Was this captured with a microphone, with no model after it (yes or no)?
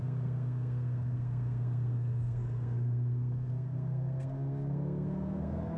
no